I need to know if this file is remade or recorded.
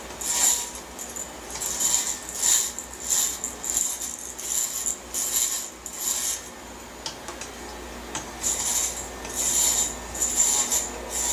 recorded